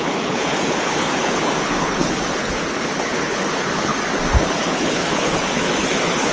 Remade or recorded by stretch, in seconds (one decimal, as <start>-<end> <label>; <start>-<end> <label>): 0.0-3.9 remade; 3.9-4.4 recorded; 4.4-6.3 remade